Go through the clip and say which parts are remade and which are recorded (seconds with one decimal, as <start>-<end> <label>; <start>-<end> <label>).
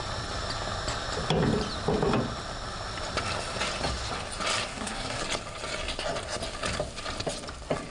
0.0-4.7 recorded; 4.7-5.2 remade; 5.2-7.9 recorded